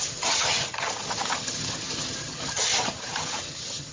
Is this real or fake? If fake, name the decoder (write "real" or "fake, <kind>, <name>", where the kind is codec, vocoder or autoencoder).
fake, vocoder, HiFi-GAN